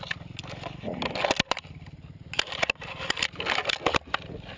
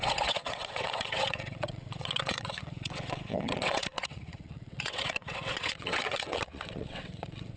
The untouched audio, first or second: first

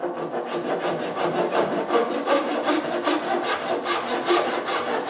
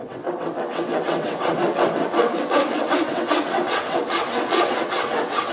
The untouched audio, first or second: first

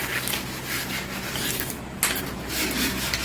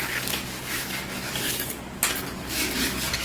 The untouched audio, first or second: first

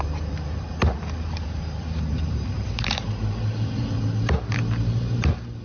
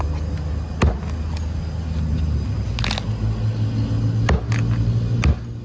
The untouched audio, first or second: second